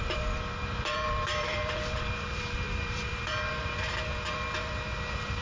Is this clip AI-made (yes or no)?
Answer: yes